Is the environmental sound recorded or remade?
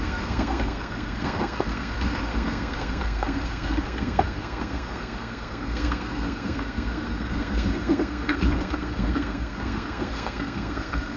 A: remade